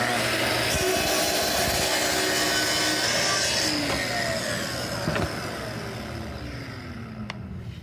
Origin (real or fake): real